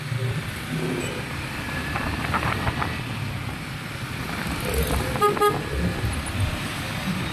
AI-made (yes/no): no